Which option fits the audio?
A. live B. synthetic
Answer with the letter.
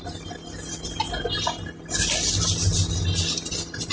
A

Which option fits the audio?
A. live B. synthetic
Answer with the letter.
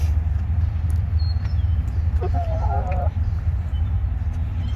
A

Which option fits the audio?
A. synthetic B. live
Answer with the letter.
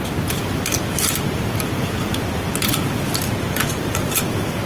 B